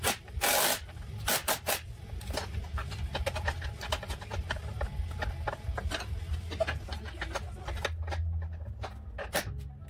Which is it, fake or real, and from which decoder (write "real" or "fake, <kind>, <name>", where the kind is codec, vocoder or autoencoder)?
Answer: real